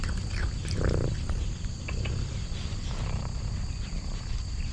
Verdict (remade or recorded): recorded